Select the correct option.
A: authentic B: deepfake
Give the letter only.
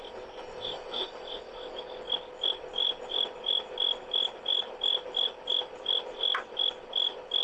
A